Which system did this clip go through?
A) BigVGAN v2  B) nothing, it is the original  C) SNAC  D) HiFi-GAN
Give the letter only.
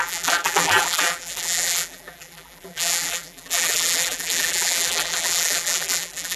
A